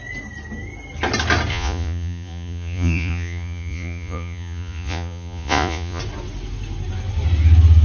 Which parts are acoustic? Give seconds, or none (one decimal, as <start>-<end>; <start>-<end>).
0.0-1.5; 6.0-7.8